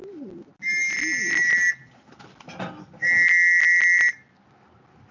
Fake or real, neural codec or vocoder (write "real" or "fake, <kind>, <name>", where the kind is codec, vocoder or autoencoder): real